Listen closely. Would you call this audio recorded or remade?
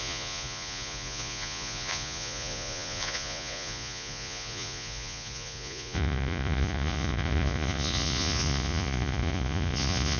remade